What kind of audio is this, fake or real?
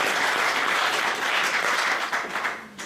real